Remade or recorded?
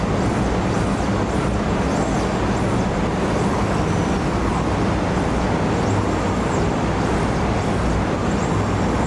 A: recorded